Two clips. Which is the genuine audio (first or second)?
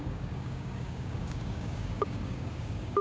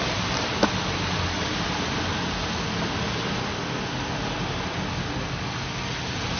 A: second